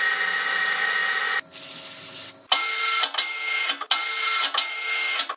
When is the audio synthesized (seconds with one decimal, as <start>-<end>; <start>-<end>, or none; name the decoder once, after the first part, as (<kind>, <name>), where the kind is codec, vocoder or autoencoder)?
none